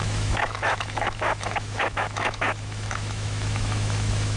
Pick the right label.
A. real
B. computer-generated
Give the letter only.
B